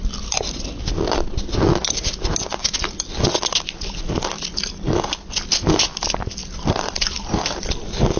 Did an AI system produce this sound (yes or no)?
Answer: no